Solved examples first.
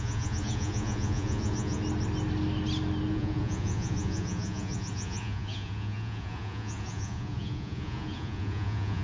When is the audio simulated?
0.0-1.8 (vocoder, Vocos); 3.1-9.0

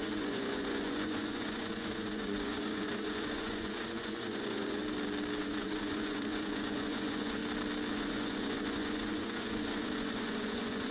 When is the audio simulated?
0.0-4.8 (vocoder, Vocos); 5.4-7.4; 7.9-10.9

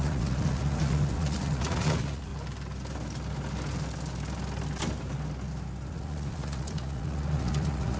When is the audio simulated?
0.0-2.3 (vocoder, Vocos); 5.9-8.0